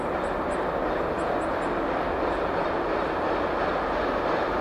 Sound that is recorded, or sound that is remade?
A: recorded